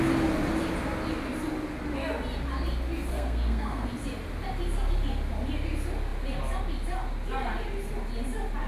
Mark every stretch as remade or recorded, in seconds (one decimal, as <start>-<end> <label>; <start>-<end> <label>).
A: 0.0-3.1 recorded; 3.1-3.9 remade; 3.9-8.7 recorded

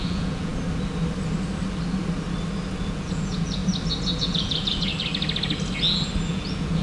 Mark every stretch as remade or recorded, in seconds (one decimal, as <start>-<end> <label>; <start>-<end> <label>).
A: 0.0-0.5 remade; 0.5-2.8 recorded; 2.8-3.6 remade; 3.6-4.2 recorded; 4.2-4.9 remade; 4.9-6.3 recorded; 6.3-6.8 remade

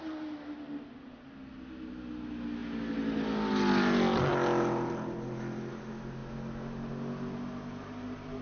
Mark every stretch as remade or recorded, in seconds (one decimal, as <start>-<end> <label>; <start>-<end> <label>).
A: 0.0-8.4 recorded